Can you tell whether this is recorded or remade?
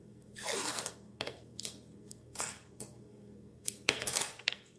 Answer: remade